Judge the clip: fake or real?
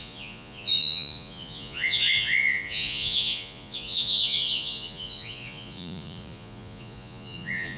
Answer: fake